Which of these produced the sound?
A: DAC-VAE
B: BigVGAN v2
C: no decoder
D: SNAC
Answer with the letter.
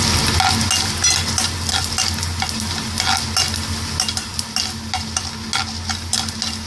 C